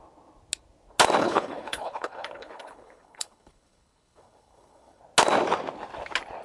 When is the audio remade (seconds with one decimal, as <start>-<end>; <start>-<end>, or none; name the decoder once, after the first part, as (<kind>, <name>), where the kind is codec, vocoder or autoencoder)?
1.2-5.0 (codec, HILCodec)